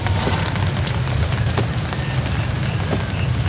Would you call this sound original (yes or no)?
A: yes